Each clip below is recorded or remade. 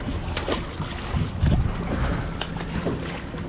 recorded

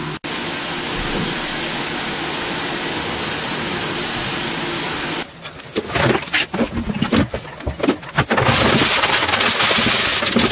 recorded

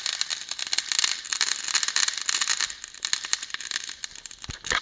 recorded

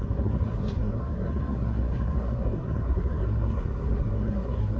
remade